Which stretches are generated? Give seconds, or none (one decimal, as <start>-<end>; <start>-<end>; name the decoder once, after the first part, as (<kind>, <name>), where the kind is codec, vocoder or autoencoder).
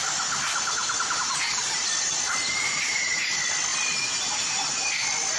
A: none